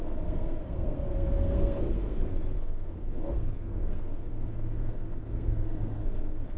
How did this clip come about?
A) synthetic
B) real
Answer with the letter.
A